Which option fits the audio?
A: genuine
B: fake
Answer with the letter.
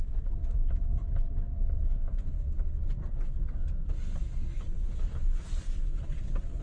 A